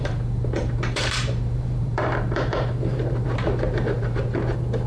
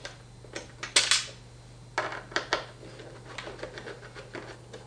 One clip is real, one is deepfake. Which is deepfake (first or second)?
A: first